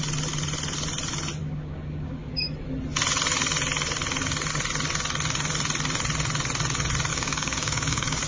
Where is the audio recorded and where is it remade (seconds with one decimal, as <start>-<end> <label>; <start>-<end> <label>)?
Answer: 0.0-1.4 recorded; 1.4-2.3 remade; 2.3-7.1 recorded; 7.1-8.3 remade